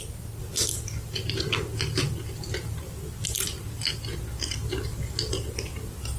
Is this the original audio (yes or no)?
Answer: yes